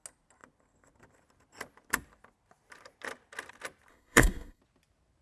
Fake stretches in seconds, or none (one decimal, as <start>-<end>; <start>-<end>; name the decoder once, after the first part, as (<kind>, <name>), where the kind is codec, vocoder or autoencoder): 3.9-4.6 (codec, SNAC)